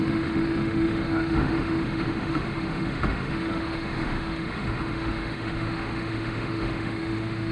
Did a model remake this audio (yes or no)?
yes